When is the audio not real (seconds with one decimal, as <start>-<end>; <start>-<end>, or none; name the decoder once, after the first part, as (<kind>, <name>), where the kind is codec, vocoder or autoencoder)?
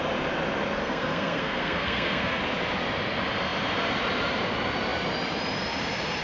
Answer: 0.8-2.4 (codec, SNAC)